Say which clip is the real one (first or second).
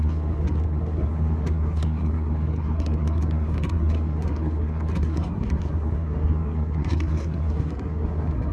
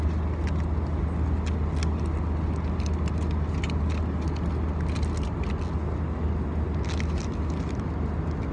second